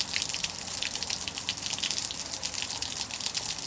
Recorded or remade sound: remade